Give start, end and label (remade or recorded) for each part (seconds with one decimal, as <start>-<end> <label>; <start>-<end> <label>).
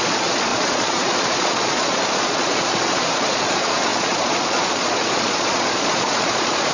0.0-6.7 remade